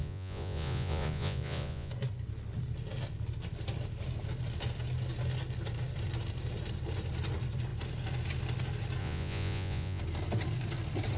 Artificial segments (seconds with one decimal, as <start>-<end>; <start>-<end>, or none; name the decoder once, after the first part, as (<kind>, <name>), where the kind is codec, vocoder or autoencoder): 0.0-1.9 (vocoder, Vocos); 9.0-10.0